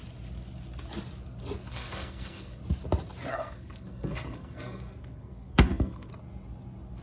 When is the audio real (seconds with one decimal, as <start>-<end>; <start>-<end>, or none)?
0.0-1.7; 2.6-3.3; 6.1-7.0